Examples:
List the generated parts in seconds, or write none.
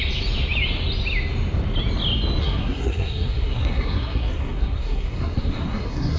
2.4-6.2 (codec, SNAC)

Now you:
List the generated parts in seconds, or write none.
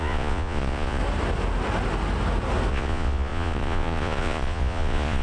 0.0-1.0 (vocoder, Vocos); 2.7-5.2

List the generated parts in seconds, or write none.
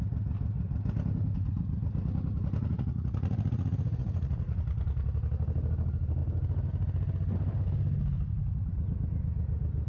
2.6-4.6 (vocoder, Vocos)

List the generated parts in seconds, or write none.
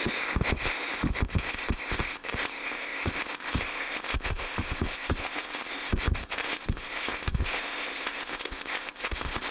0.0-9.5 (codec, ZipCodec)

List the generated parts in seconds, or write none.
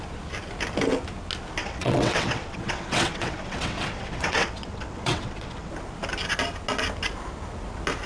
1.6-5.7 (vocoder, WaveNeXt)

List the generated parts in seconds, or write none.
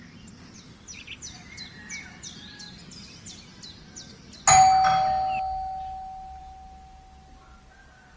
none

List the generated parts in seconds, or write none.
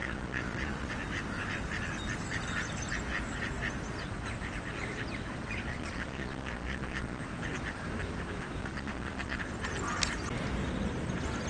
0.0-0.9 (vocoder, Vocos); 5.7-7.2; 8.6-9.4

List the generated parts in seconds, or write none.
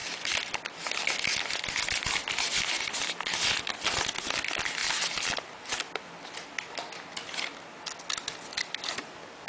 none